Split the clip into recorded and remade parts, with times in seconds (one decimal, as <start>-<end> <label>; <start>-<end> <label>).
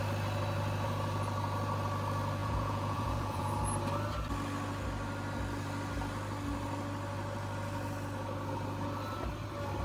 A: 0.0-2.4 recorded; 2.4-3.5 remade; 3.5-9.8 recorded